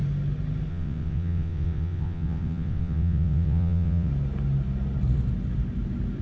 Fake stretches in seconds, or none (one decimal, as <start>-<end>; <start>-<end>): 0.7-4.1